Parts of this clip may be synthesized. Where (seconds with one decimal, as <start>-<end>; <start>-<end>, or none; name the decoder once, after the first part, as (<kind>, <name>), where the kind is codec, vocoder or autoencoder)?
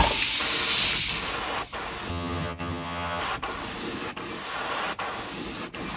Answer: 2.1-3.2 (vocoder, HiFi-GAN)